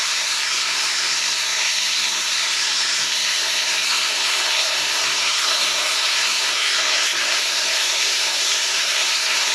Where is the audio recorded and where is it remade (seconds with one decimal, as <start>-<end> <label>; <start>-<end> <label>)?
0.0-9.5 remade